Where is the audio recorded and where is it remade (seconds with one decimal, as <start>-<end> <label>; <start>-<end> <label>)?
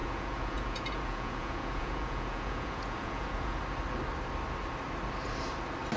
0.0-3.6 remade; 3.6-6.0 recorded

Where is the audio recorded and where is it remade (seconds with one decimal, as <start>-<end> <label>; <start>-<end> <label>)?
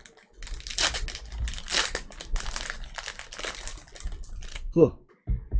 0.0-4.5 recorded; 4.5-5.1 remade; 5.1-5.6 recorded